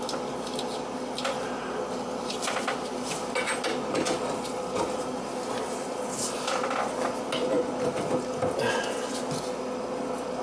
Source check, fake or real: real